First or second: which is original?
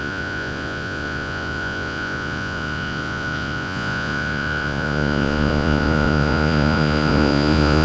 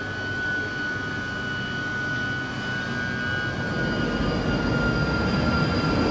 second